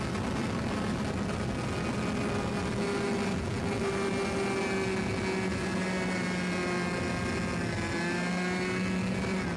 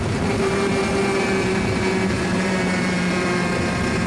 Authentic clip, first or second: first